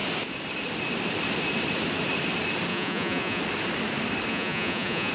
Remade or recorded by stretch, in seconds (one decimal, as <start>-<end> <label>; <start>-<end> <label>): 0.0-2.7 recorded; 2.7-3.4 remade; 3.4-4.3 recorded; 4.3-5.1 remade